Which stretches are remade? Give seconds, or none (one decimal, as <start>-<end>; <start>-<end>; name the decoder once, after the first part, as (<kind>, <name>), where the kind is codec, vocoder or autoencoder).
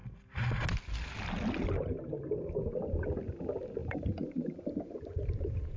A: 3.8-5.8 (vocoder, BigVGAN v2)